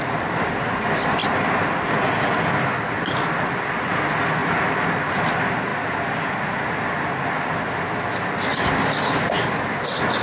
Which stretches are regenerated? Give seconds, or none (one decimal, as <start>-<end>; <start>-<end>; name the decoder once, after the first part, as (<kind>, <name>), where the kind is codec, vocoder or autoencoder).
4.4-5.1 (vocoder, BigVGAN v2)